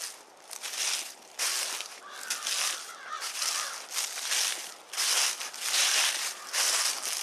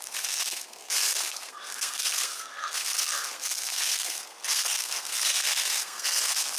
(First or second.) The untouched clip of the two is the first